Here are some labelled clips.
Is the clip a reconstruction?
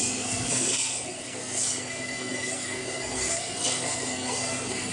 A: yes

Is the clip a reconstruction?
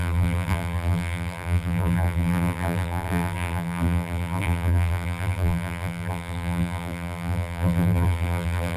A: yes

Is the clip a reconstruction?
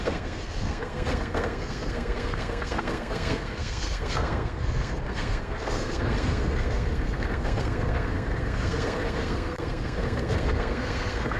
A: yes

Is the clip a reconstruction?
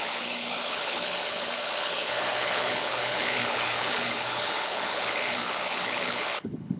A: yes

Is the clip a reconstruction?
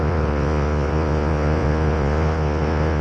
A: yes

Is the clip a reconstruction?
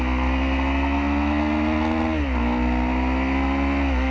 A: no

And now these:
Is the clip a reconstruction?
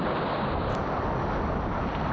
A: no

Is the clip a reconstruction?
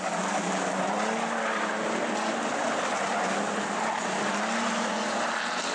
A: no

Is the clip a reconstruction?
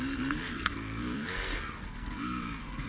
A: yes